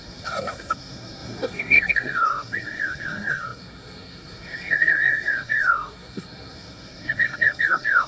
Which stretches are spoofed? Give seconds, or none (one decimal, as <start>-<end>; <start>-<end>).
0.0-8.1